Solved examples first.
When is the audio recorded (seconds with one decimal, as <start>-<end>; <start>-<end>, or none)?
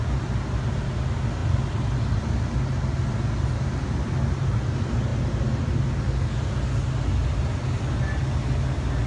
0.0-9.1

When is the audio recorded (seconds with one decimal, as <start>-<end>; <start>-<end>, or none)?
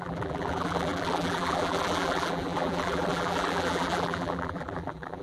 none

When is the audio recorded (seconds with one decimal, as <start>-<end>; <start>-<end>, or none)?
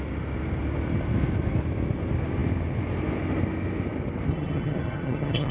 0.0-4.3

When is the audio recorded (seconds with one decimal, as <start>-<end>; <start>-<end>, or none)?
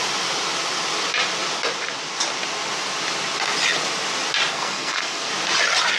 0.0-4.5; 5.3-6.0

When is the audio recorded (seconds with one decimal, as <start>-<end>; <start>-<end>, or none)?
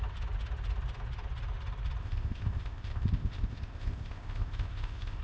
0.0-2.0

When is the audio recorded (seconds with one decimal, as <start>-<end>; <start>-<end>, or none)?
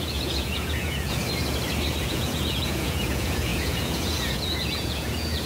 1.2-2.0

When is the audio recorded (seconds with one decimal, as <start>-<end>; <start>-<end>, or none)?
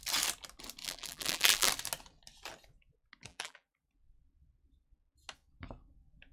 0.0-0.8; 1.7-3.3; 3.9-6.3